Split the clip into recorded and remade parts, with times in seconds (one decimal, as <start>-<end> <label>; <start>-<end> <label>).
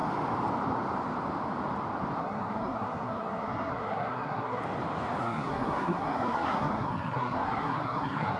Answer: 0.0-2.2 recorded; 2.2-4.6 remade; 4.6-5.2 recorded; 5.2-8.4 remade